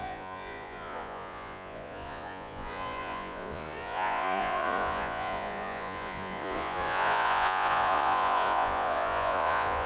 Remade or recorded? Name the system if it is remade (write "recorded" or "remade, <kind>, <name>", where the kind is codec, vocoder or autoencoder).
remade, vocoder, Vocos